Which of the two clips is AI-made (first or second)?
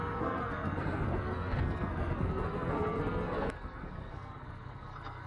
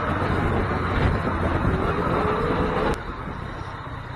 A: first